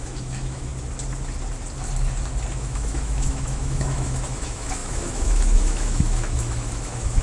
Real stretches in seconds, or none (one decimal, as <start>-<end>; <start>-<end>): 0.7-2.5